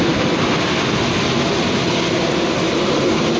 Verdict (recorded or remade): remade